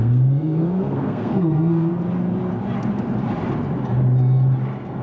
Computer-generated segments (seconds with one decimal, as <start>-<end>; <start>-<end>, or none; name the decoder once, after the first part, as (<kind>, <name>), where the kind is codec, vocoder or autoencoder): 0.0-1.9 (codec, SNAC)